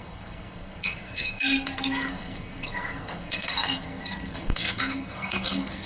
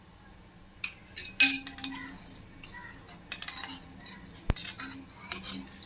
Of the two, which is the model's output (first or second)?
first